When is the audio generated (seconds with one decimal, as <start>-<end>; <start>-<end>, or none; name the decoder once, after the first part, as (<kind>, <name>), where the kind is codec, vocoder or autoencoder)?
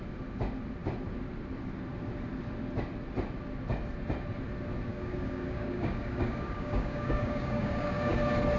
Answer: 4.9-8.2 (codec, DAC)